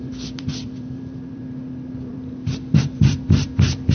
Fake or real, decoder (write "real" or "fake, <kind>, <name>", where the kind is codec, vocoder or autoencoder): fake, vocoder, BigVGAN v2